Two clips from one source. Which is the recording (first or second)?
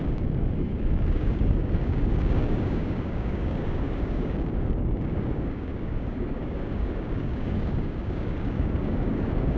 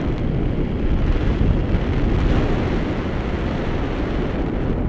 second